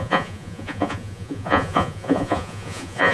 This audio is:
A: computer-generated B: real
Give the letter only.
A